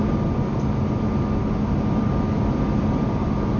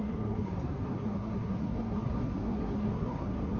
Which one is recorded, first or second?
first